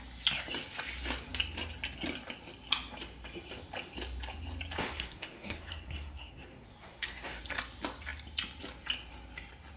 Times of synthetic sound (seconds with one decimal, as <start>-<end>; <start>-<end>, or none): 4.8-7.4